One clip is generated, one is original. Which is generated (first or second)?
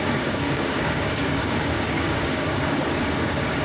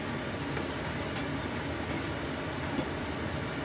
first